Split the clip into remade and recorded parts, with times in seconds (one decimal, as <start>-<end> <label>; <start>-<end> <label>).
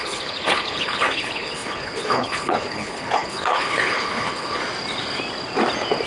0.0-4.6 remade; 4.6-6.1 recorded